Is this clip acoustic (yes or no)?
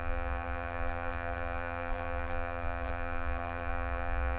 no